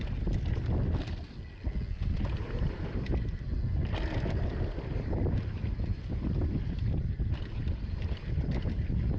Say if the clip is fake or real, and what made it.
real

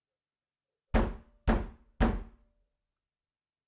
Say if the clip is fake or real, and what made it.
real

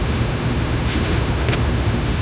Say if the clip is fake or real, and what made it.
fake, autoencoder, DAC-VAE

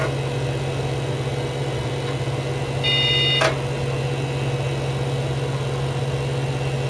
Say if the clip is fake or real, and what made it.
real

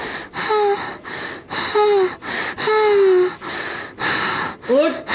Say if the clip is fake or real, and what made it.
real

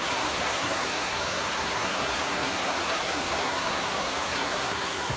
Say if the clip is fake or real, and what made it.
fake, codec, SNAC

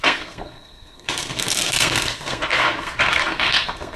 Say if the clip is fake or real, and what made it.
fake, codec, SNAC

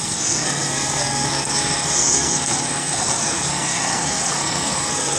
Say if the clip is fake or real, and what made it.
fake, codec, SNAC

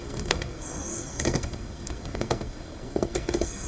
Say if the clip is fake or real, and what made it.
fake, codec, SNAC